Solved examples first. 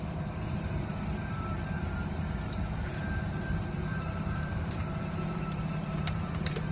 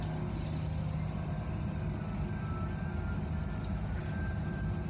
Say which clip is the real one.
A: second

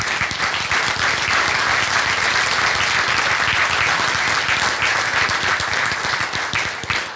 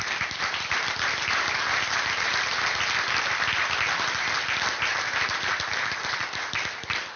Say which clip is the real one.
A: first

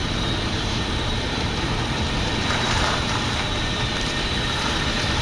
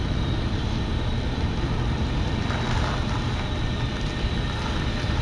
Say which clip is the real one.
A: second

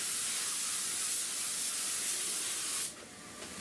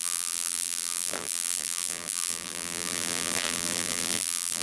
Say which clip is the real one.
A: first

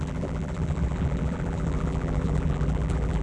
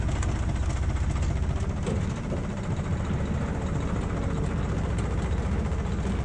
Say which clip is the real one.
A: second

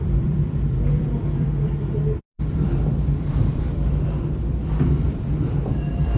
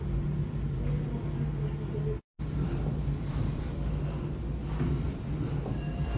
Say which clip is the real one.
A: second